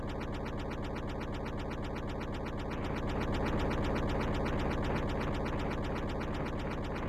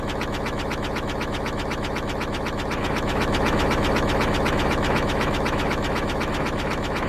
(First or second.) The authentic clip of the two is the first